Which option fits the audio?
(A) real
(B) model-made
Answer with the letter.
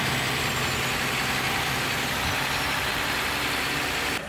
A